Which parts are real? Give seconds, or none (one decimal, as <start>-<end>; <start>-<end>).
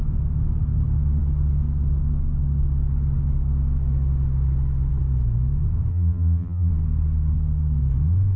0.0-5.9; 6.7-8.4